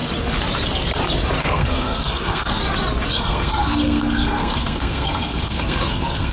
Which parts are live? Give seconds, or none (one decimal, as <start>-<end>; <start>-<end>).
0.0-1.4; 2.6-3.1

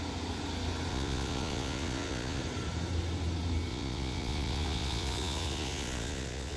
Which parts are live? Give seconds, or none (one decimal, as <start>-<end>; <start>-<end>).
0.0-0.9; 2.4-3.7

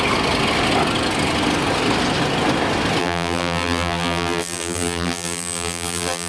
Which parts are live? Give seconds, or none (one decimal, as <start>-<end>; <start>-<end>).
0.0-3.0

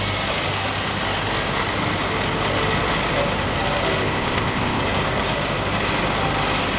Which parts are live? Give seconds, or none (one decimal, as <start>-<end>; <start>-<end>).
0.0-4.0; 4.8-6.8

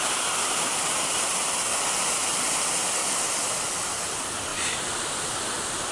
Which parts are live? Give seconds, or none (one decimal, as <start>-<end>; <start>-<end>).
1.7-2.4; 3.0-4.1

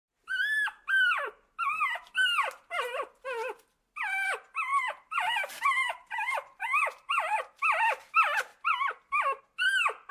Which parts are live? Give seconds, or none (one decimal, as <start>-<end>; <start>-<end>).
0.0-4.7; 7.4-10.1

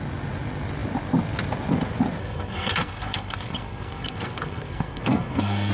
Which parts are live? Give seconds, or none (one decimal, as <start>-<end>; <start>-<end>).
0.0-2.2

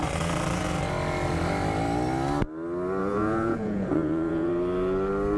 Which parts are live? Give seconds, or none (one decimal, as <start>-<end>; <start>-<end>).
0.0-3.0; 4.5-5.4